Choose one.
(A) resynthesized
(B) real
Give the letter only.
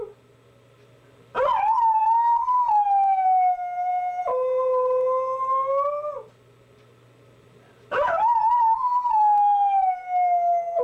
B